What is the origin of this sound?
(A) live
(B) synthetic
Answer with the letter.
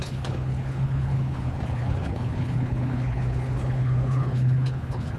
B